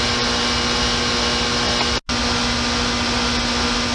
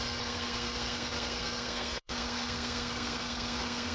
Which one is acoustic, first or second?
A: first